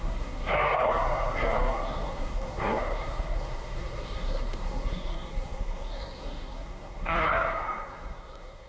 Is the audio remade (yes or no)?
yes